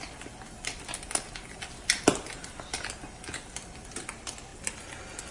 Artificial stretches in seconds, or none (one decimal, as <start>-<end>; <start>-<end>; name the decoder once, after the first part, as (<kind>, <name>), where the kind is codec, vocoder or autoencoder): none